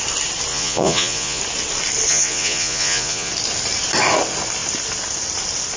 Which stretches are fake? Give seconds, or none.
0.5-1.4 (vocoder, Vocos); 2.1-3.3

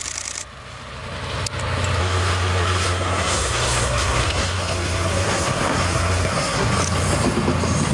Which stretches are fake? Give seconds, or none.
2.0-6.7 (codec, SNAC)

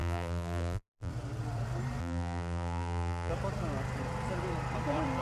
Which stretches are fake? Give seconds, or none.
0.0-1.1 (vocoder, BigVGAN v2); 2.0-3.3